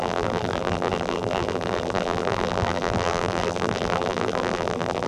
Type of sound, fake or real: fake